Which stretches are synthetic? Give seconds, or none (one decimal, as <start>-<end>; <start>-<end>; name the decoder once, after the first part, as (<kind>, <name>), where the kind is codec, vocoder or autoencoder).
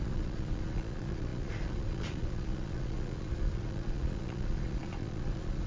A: 0.0-5.7 (vocoder, Vocos)